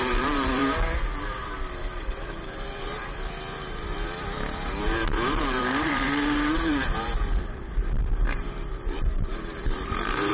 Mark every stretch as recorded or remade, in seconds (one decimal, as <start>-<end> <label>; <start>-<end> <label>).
0.0-0.6 remade; 0.6-1.2 recorded; 1.2-10.3 remade